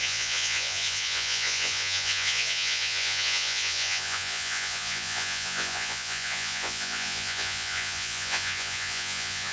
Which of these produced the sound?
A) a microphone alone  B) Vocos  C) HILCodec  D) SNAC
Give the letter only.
B